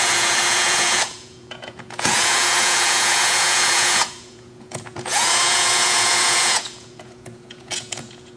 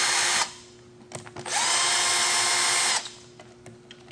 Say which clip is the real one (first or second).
second